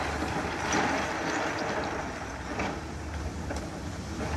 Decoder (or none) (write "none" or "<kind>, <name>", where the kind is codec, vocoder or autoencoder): none